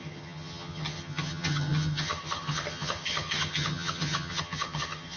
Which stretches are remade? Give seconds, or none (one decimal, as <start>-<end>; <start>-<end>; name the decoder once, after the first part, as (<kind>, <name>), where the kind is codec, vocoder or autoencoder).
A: 0.0-5.2 (vocoder, HiFi-GAN)